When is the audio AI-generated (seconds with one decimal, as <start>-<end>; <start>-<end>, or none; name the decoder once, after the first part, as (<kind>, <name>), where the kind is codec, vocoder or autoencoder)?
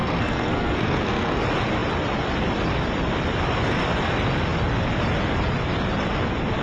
0.0-1.4 (codec, SNAC)